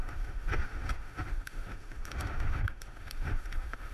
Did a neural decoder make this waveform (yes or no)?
yes